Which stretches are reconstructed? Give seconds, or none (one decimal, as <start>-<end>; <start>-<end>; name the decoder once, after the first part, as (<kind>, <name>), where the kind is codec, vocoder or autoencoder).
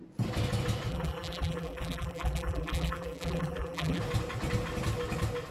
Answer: 0.9-4.0 (vocoder, BigVGAN v2)